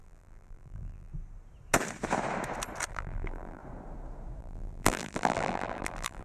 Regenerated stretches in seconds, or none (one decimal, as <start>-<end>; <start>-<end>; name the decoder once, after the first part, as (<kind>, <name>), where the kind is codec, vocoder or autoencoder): 0.0-1.1 (vocoder, BigVGAN v2); 2.9-3.6; 4.4-6.2